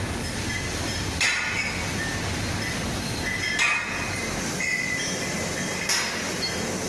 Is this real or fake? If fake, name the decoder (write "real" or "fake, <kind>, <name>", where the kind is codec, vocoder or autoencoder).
real